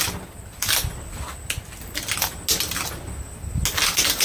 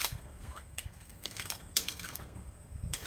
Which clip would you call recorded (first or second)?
first